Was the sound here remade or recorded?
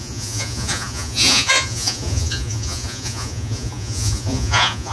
remade